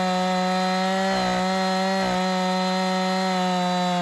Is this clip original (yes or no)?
yes